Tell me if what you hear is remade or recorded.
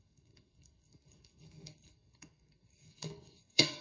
remade